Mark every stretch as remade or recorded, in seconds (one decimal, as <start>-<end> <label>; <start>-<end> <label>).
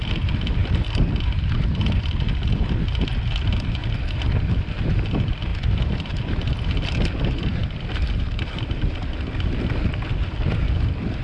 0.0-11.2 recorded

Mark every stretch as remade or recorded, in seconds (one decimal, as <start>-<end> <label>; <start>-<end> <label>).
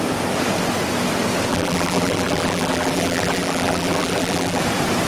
0.0-1.5 recorded; 1.5-4.6 remade; 4.6-5.1 recorded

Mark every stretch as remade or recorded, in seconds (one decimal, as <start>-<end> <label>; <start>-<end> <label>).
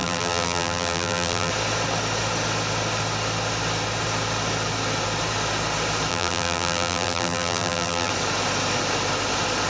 0.0-1.5 remade; 1.5-6.1 recorded; 6.1-8.1 remade; 8.1-9.7 recorded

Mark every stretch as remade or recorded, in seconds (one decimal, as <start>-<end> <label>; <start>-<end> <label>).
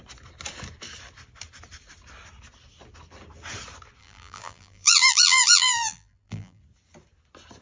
0.0-4.0 recorded; 4.0-6.6 remade; 6.6-7.6 recorded